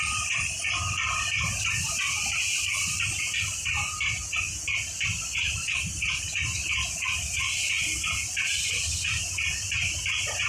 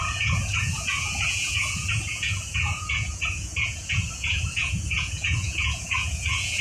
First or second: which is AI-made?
second